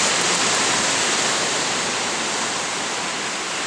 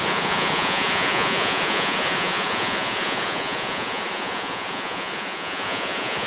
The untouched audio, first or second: first